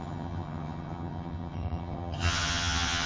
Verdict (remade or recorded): remade